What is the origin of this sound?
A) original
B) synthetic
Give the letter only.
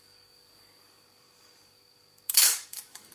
B